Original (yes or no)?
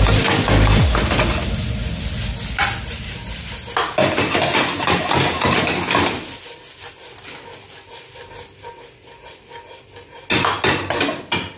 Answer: yes